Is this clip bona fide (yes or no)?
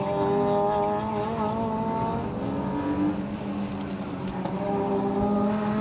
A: yes